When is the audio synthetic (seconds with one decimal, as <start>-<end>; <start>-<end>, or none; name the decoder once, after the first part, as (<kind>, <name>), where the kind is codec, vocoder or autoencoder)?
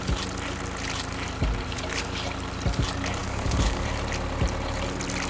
3.2-3.9 (codec, DAC)